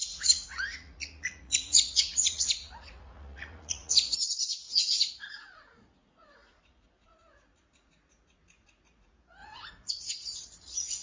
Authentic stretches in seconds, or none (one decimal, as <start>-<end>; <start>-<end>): none